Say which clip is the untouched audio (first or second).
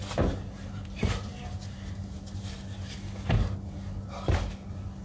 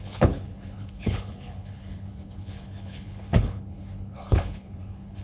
first